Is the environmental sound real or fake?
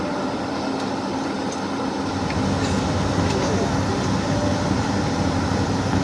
real